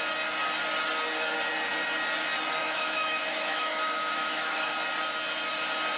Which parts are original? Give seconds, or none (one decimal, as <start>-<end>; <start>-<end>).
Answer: 0.0-2.6; 4.7-6.0